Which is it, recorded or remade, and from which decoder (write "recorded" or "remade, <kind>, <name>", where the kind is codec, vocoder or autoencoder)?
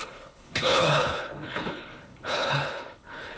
remade, codec, HILCodec